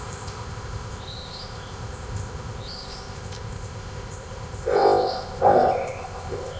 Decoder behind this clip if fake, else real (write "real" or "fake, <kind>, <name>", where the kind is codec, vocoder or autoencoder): fake, codec, ZipCodec